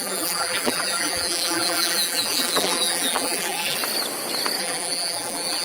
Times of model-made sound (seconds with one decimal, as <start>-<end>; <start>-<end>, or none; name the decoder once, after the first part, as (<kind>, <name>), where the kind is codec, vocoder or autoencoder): 0.0-3.8 (vocoder, BigVGAN v2); 4.6-5.6